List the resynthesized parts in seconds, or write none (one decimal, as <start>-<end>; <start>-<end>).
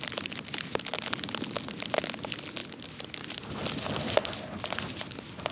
none